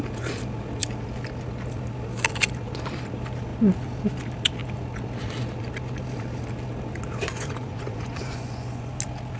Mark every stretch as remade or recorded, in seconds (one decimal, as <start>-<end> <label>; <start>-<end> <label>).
0.0-7.3 recorded; 7.3-8.9 remade; 8.9-9.4 recorded